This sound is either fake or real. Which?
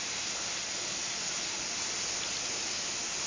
real